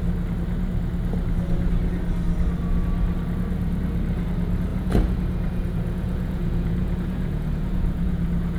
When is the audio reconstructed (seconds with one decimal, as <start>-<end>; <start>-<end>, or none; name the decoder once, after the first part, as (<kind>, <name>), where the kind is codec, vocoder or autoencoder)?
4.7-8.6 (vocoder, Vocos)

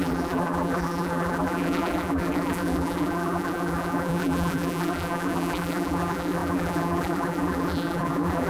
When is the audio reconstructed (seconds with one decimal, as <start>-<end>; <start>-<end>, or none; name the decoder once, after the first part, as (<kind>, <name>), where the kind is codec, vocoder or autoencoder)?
0.0-8.5 (vocoder, BigVGAN v2)

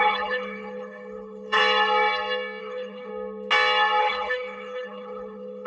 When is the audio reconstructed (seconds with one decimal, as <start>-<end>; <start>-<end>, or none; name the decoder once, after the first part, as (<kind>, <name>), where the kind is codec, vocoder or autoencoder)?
0.0-1.6 (codec, HILCodec); 2.6-3.1; 4.0-5.7